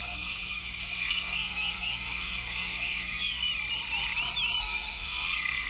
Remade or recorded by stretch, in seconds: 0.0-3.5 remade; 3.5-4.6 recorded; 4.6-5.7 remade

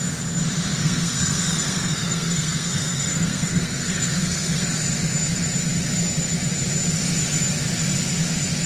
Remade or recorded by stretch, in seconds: 0.0-0.7 recorded; 0.7-4.7 remade; 4.7-8.7 recorded

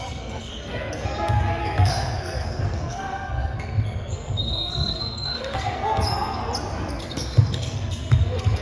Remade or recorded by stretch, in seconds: 0.0-6.4 remade; 6.4-6.9 recorded; 6.9-8.6 remade